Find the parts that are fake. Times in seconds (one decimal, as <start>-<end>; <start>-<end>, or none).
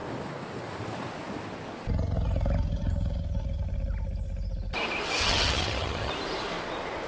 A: 5.2-6.1